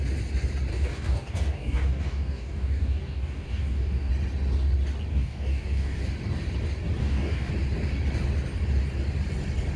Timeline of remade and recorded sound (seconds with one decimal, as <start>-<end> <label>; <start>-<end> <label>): 0.0-0.7 recorded; 0.7-4.1 remade; 4.1-5.1 recorded; 5.1-6.0 remade; 6.0-7.0 recorded; 7.0-7.5 remade; 7.5-9.8 recorded